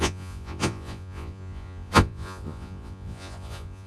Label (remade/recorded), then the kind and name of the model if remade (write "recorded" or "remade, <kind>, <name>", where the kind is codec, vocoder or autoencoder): remade, vocoder, Vocos